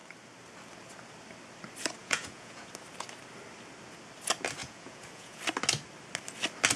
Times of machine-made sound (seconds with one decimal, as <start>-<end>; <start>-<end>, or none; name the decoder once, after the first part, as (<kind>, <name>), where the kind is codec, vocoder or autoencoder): 2.0-2.7 (vocoder, Vocos); 4.6-5.4